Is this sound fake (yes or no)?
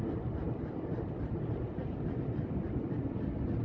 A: no